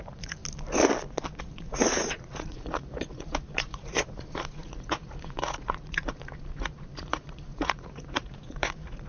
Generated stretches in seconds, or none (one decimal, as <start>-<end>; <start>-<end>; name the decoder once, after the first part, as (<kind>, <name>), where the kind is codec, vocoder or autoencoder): 0.0-0.4 (vocoder, Vocos); 1.4-9.1

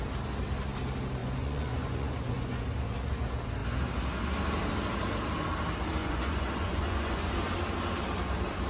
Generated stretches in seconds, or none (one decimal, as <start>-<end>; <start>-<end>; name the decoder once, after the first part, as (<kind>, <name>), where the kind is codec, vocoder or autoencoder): 1.2-2.6 (vocoder, Vocos); 6.0-7.3

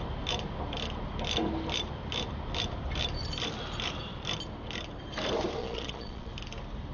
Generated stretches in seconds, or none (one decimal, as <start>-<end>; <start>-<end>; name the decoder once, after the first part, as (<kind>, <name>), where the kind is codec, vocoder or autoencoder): 5.6-6.3 (vocoder, Vocos)

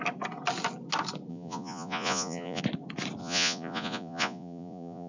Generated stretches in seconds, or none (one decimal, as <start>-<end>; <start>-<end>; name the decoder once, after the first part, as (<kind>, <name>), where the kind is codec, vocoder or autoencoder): 1.3-2.6 (vocoder, Vocos); 3.2-5.1

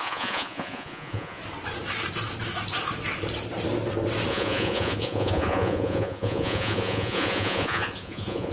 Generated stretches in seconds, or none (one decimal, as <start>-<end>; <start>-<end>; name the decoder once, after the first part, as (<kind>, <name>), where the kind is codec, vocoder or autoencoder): 0.0-1.4 (vocoder, Vocos); 4.3-8.5